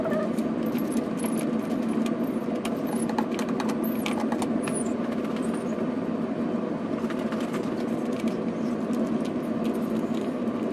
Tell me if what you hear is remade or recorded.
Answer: recorded